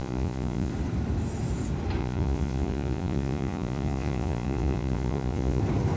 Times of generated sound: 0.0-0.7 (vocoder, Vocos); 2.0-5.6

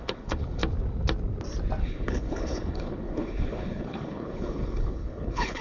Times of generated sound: 0.0-0.6 (codec, HILCodec); 1.8-5.6